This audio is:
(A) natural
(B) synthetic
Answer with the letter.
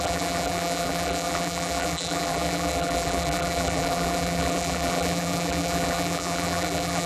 B